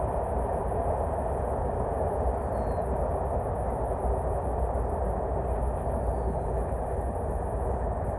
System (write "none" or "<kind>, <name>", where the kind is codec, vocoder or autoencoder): none